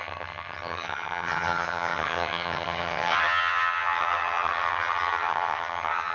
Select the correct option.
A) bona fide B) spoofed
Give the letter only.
B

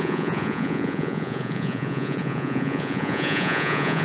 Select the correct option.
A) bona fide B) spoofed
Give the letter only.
B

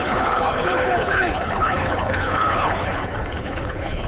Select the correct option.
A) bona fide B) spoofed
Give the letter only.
B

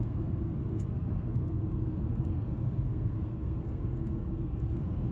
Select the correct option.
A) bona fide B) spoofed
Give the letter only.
B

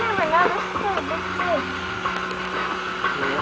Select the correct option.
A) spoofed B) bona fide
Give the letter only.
B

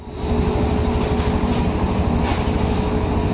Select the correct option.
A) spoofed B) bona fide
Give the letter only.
B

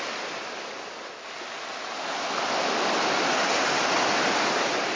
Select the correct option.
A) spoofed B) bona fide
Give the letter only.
B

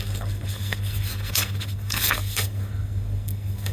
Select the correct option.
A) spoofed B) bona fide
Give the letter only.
A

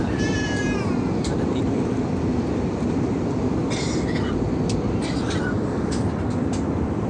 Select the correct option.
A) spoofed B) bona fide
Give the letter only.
A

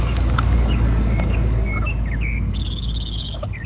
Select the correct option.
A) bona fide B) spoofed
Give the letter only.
B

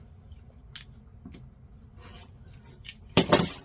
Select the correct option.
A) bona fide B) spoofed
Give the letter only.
A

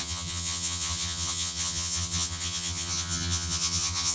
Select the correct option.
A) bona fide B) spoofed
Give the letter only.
B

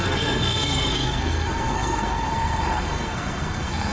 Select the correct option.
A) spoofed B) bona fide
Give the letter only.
A